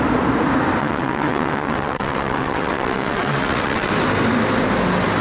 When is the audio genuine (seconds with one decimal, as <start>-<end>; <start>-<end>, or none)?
0.0-0.8; 3.9-5.2